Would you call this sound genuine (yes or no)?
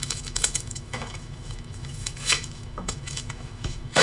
no